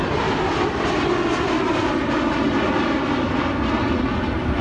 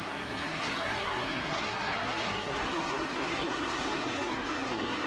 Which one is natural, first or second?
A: first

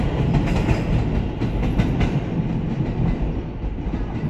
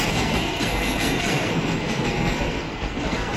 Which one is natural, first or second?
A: first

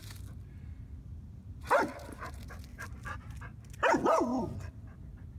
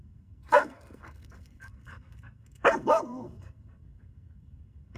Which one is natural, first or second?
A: first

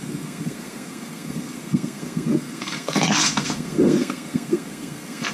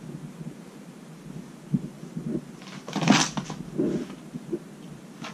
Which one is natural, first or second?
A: second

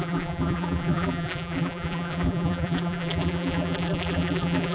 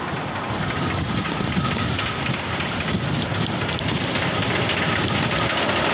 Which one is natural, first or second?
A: second